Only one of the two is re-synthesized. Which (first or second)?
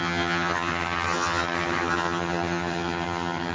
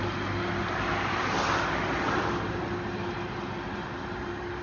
first